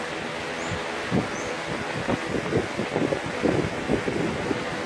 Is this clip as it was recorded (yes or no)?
yes